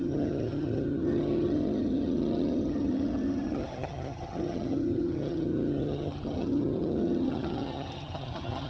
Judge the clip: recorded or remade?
remade